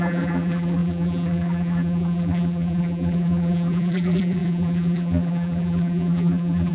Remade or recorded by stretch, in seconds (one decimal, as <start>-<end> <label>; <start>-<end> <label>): 0.0-6.7 remade